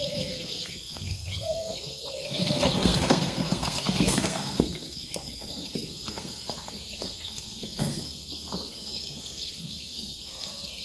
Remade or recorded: remade